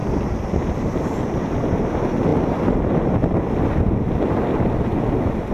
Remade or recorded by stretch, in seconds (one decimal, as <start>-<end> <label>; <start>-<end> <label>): 0.0-1.8 remade; 1.8-5.5 recorded